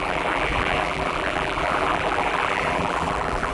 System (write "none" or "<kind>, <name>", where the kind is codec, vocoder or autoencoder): vocoder, BigVGAN v2